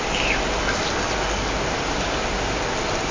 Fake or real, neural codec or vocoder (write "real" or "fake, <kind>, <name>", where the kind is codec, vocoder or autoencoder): real